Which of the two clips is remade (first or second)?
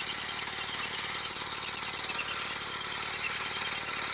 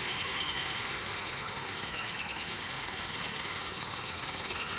second